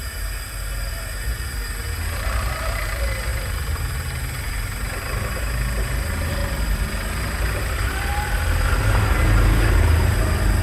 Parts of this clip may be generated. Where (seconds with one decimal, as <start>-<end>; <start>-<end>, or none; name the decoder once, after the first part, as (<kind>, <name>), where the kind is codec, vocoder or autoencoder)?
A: 3.3-4.2 (vocoder, BigVGAN v2); 6.4-6.9